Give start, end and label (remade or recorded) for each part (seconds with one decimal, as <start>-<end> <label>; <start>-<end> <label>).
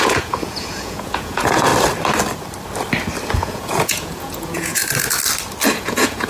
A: 0.0-1.7 remade; 1.7-3.3 recorded; 3.3-4.8 remade; 4.8-5.7 recorded; 5.7-6.3 remade